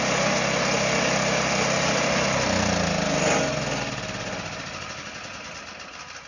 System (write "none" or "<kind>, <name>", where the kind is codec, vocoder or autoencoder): none